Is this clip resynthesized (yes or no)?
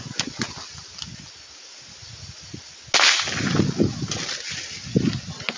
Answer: no